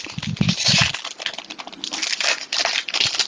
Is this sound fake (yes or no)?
no